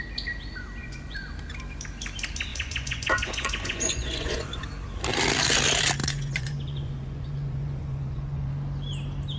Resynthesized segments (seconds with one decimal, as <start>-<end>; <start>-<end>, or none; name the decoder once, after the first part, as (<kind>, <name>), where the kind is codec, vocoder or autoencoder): 0.8-1.3 (vocoder, Vocos); 2.5-4.6; 6.0-8.5